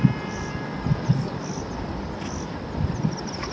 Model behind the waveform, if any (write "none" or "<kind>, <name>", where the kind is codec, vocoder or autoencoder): none